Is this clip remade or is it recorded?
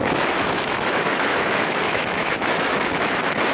remade